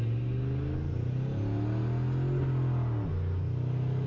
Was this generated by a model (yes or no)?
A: no